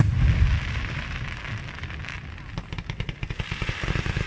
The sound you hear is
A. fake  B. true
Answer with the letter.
A